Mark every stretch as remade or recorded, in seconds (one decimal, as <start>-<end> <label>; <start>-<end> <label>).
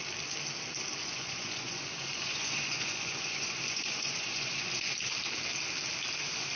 0.0-1.0 recorded; 1.0-4.9 remade; 4.9-6.5 recorded